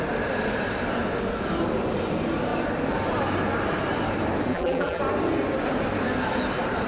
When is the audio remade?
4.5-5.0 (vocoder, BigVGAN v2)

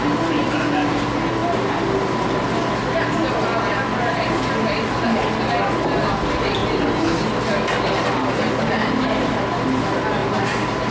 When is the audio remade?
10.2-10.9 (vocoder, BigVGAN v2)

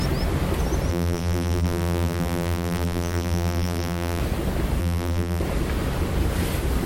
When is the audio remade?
0.9-4.2 (vocoder, BigVGAN v2); 4.8-5.4

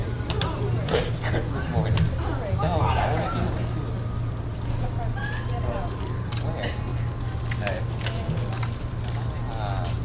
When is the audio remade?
0.0-1.1 (vocoder, BigVGAN v2)

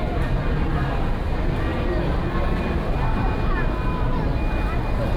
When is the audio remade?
1.7-2.5 (vocoder, BigVGAN v2)